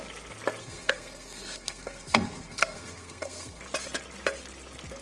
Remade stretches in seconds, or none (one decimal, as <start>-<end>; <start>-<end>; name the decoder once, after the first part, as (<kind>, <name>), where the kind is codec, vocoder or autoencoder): 0.6-3.6 (codec, SNAC)